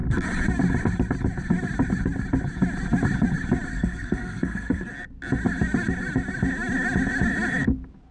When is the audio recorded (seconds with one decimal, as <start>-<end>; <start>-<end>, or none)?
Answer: 0.0-3.7; 4.9-8.1